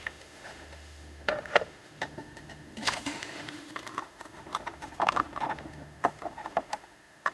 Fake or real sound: fake